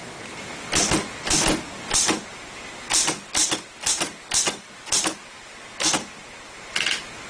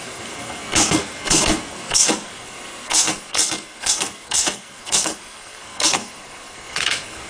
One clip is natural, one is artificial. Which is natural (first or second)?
first